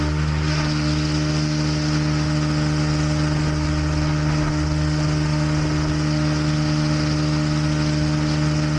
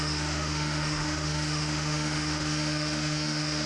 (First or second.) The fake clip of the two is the second